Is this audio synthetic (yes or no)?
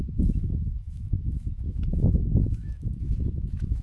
yes